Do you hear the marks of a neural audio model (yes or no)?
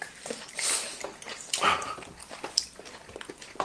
no